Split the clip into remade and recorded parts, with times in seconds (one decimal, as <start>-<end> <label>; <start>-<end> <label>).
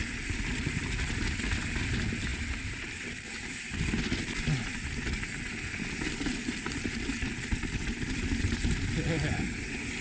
0.0-2.3 recorded; 2.3-3.8 remade; 3.8-10.0 recorded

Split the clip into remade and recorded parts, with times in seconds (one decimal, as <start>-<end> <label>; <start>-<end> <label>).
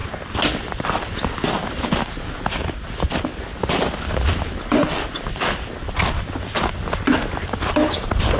0.0-1.8 remade; 1.8-3.5 recorded; 3.5-7.7 remade; 7.7-8.4 recorded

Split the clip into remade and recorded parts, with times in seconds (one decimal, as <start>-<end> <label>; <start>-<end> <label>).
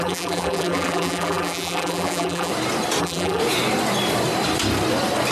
0.0-2.5 remade; 2.5-3.0 recorded; 3.0-3.4 remade; 3.4-5.3 recorded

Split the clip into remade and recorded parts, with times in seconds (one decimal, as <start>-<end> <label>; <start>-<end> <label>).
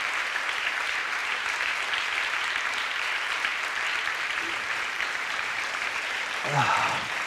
0.0-3.5 remade; 3.5-4.3 recorded; 4.3-7.3 remade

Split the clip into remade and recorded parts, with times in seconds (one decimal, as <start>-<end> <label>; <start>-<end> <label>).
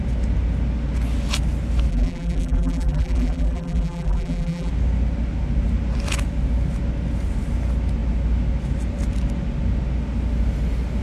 0.0-1.9 recorded; 1.9-4.7 remade; 4.7-11.0 recorded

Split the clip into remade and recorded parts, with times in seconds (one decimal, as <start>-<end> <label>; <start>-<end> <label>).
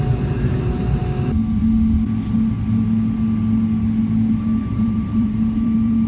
0.0-1.0 remade; 1.0-4.7 recorded; 4.7-6.1 remade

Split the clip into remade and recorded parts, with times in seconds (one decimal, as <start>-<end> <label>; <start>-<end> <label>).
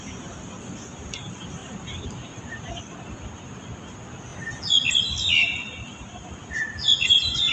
0.0-1.6 recorded; 1.6-2.8 remade; 2.8-7.5 recorded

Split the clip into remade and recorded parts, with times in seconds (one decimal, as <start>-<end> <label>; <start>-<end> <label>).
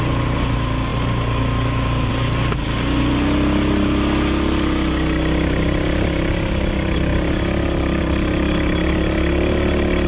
0.0-10.1 recorded